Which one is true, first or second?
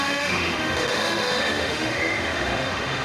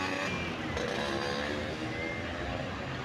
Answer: second